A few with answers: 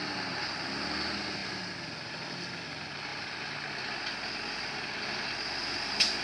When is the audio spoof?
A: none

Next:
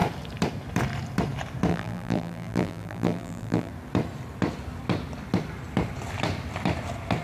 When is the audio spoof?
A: 1.7-3.7 (vocoder, BigVGAN v2)

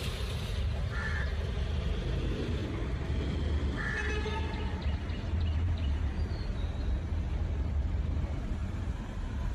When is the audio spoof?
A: 0.0-2.6 (vocoder, BigVGAN v2); 5.1-6.7; 7.8-9.5

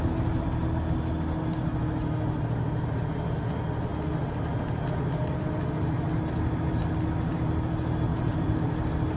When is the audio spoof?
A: 8.1-8.6 (vocoder, BigVGAN v2)

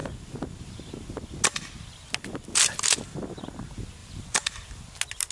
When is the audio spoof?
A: 4.0-4.8 (vocoder, BigVGAN v2)

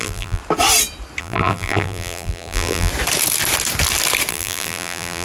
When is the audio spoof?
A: 0.0-0.4 (vocoder, BigVGAN v2); 1.2-2.9; 4.3-5.2

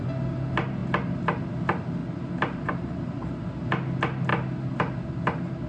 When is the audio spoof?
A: 2.0-3.5 (vocoder, BigVGAN v2)